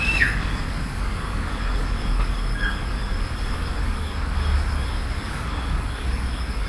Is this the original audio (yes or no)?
no